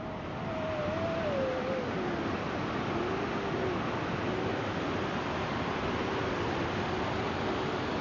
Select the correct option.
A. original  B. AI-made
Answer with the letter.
A